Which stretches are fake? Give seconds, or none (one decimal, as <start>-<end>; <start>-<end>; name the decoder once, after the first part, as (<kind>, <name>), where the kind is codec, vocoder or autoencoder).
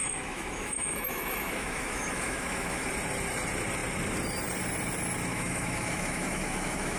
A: 0.0-2.9 (autoencoder, DAC-VAE); 5.3-7.0